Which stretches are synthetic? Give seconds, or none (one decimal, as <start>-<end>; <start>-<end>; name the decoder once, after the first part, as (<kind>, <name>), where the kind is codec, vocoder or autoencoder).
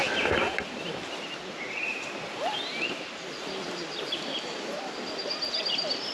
none